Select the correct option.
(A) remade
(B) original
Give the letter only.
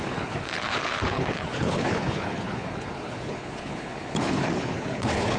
A